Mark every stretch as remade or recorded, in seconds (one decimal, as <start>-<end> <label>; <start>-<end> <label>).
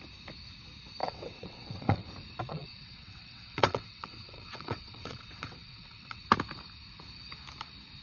0.0-1.0 recorded; 1.0-2.1 remade; 2.1-2.5 recorded; 2.5-6.2 remade; 6.2-8.0 recorded